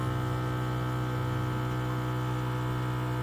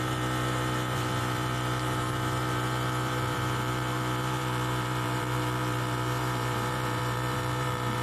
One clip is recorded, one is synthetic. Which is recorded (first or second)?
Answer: first